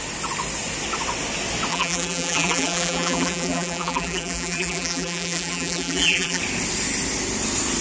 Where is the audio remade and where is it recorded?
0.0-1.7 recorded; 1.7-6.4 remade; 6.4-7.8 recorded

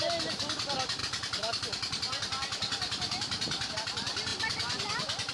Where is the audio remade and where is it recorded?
0.0-1.0 remade; 1.0-3.7 recorded; 3.7-5.3 remade

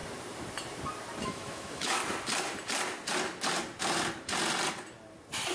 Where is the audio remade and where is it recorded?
0.0-1.2 recorded; 1.2-2.0 remade; 2.0-5.5 recorded

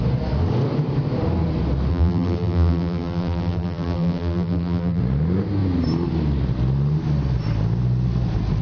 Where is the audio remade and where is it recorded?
0.0-1.9 recorded; 1.9-5.0 remade; 5.0-8.6 recorded

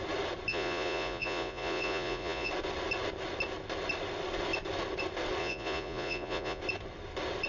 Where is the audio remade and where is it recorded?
0.0-0.5 recorded; 0.5-2.5 remade; 2.5-5.4 recorded; 5.4-6.6 remade; 6.6-7.5 recorded

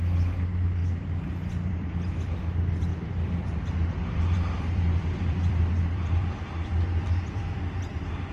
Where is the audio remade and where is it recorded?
0.0-2.9 recorded; 2.9-7.6 remade; 7.6-8.3 recorded

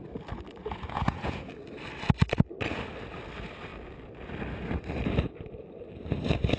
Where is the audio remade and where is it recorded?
0.0-0.6 recorded; 0.6-1.5 remade; 1.5-6.6 recorded